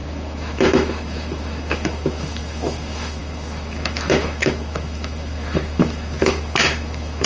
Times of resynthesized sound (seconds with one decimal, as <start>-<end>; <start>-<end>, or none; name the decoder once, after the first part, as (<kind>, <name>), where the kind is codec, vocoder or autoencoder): 0.0-7.3 (autoencoder, DAC-VAE)

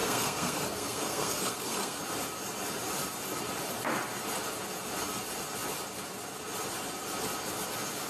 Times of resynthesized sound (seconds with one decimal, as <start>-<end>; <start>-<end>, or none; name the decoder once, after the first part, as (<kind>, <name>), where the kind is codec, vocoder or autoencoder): 0.0-2.0 (codec, SNAC)

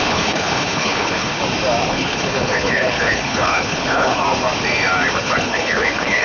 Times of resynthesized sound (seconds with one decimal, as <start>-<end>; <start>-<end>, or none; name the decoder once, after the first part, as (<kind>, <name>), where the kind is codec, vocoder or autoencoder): 0.0-1.4 (codec, HILCodec); 1.9-4.2; 5.2-6.2

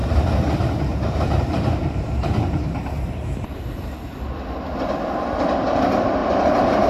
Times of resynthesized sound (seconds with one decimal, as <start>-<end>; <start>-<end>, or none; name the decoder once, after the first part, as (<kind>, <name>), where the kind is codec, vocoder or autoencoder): 0.0-4.1 (vocoder, BigVGAN v2); 6.2-6.9

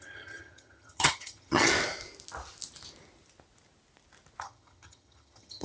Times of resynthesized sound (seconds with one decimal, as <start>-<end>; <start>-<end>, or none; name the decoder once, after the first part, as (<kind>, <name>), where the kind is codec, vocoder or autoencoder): 0.0-1.7 (vocoder, HiFi-GAN); 4.4-5.6

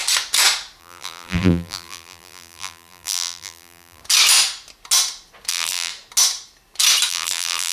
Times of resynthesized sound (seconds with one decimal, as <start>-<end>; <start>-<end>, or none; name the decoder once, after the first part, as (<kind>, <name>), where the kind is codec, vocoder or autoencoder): 0.8-4.0 (vocoder, BigVGAN v2); 5.5-5.9; 7.1-7.7

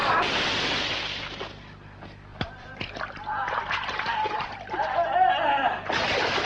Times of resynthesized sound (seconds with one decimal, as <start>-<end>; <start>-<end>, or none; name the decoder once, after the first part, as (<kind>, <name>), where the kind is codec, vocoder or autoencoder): 0.0-0.9 (vocoder, BigVGAN v2); 2.3-4.5

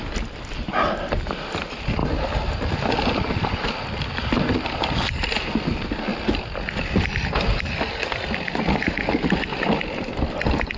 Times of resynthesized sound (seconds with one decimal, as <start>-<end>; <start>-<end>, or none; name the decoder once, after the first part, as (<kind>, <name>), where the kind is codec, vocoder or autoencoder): none